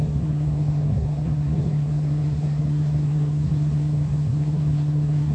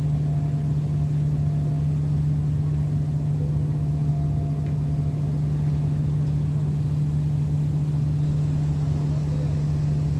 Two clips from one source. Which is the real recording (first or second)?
second